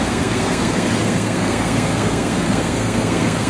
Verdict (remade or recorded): remade